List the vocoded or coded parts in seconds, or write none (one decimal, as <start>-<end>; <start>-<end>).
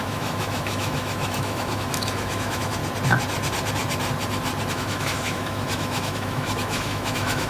0.0-2.8; 4.7-7.5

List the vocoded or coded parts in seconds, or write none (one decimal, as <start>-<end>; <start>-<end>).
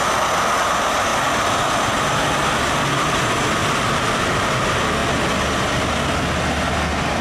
1.1-2.5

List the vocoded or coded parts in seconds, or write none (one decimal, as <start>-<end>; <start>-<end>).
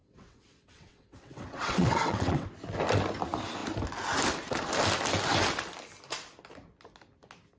0.0-2.5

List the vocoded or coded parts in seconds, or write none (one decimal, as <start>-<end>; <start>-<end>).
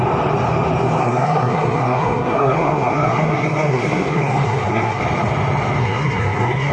1.0-5.0; 5.8-6.7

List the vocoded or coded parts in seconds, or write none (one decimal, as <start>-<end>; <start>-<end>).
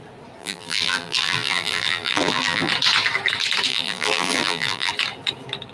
0.4-2.7; 3.7-4.9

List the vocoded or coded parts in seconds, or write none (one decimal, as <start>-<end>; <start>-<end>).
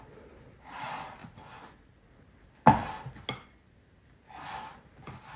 none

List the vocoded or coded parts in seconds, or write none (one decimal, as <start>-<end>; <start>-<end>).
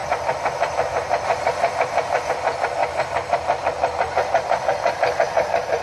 0.0-2.3; 2.8-5.8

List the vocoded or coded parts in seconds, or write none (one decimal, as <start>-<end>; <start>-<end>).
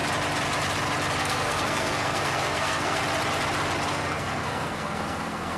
1.2-3.0; 3.9-5.6